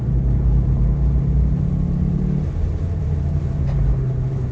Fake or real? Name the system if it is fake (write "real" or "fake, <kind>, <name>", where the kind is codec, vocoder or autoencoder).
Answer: fake, vocoder, BigVGAN v2